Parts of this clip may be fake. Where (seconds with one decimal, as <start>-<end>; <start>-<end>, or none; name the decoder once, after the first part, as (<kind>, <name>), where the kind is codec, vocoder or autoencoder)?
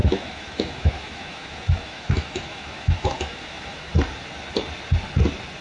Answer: 0.0-3.9 (autoencoder, DAC-VAE)